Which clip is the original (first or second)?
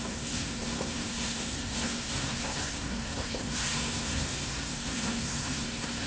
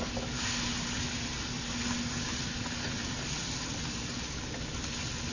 second